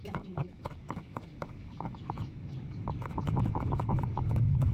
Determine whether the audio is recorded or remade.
remade